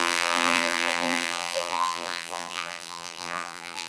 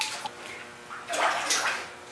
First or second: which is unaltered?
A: second